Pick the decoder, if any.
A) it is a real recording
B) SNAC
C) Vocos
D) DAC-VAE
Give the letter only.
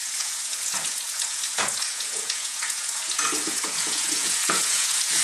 C